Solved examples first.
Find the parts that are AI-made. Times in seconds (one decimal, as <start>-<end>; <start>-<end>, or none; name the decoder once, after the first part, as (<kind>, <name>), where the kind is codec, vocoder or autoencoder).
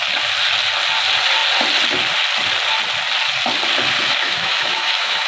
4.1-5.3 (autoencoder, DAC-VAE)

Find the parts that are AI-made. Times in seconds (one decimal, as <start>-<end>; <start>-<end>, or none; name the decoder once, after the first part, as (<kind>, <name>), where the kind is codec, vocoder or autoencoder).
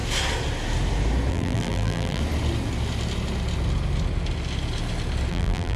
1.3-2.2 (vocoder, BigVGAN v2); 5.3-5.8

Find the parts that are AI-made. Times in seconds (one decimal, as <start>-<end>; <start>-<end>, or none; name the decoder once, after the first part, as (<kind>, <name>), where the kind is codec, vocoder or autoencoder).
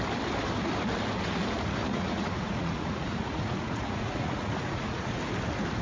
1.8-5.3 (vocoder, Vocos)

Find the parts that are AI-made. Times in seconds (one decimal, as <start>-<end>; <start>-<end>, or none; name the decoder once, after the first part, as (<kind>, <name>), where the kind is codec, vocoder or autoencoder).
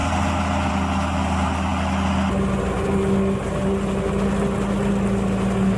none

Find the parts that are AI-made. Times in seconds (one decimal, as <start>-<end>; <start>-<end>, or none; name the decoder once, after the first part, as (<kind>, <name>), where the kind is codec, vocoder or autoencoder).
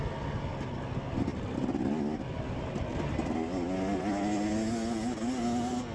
none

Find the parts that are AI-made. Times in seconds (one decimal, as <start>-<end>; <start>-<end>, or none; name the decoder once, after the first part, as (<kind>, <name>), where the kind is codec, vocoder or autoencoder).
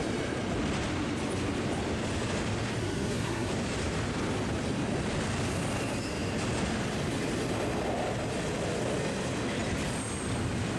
2.8-3.5 (codec, SNAC)